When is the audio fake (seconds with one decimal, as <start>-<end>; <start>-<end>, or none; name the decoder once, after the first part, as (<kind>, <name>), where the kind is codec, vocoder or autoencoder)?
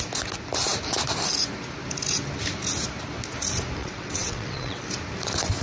3.8-4.9 (vocoder, WaveNeXt)